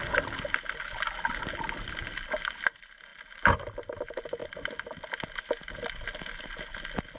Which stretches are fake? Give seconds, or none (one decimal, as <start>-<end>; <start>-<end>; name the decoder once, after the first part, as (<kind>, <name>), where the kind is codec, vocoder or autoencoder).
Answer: none